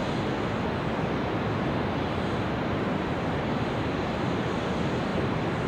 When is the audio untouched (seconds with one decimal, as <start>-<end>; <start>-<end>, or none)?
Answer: 0.0-3.4